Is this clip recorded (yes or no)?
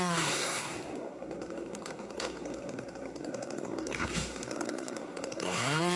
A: no